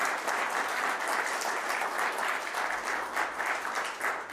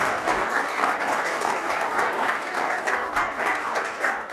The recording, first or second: first